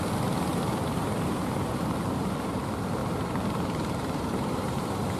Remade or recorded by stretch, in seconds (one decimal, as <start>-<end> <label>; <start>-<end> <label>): 0.0-0.5 recorded; 0.5-2.6 remade; 2.6-3.0 recorded; 3.0-4.8 remade; 4.8-5.2 recorded